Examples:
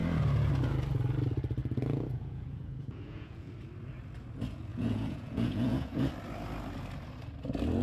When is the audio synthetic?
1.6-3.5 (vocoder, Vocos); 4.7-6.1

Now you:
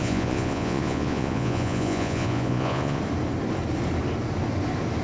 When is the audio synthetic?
0.0-3.0 (vocoder, Vocos)

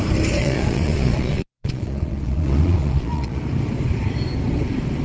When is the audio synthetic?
0.4-3.4 (vocoder, Vocos)